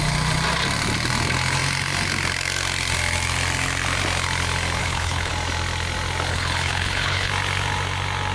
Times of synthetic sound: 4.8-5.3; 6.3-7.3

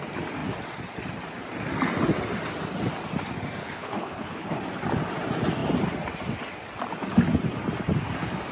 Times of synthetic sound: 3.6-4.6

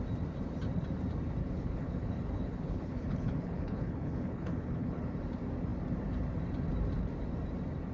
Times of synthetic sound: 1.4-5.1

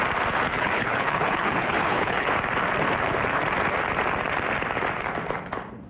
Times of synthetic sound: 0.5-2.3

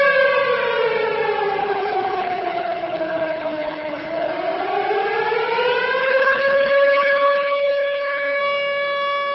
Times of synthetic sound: 1.6-4.3; 6.0-8.4

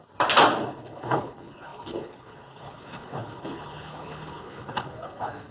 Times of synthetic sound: 0.6-5.5

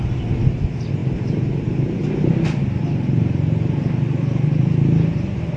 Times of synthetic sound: none

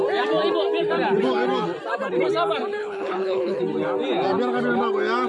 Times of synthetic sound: 2.8-3.6